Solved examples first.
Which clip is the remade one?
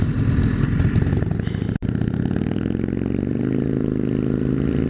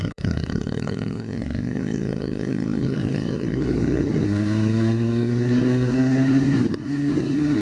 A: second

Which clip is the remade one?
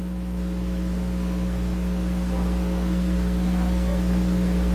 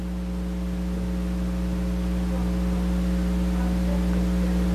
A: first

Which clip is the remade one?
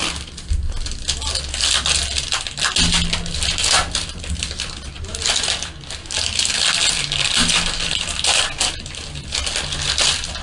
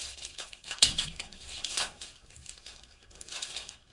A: second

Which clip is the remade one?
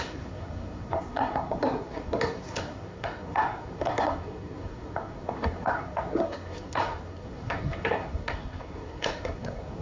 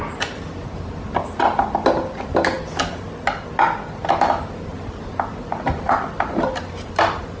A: first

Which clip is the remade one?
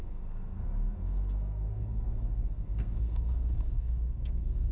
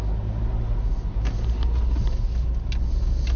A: first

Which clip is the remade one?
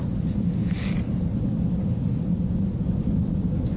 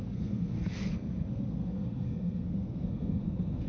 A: second